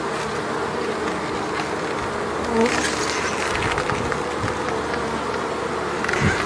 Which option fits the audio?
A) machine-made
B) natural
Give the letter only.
B